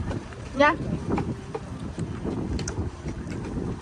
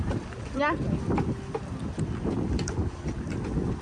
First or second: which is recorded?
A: second